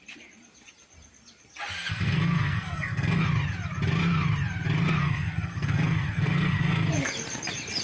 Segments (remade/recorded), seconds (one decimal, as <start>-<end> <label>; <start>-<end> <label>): 0.0-1.9 recorded; 1.9-3.2 remade; 3.2-5.0 recorded; 5.0-6.9 remade; 6.9-7.8 recorded